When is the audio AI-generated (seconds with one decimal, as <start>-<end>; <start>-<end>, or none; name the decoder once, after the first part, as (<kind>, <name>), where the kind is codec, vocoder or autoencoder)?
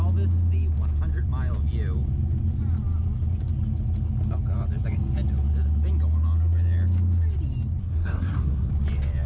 7.8-8.7 (codec, SNAC)